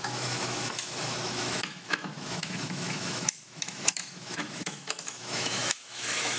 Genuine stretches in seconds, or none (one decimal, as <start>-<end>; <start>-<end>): none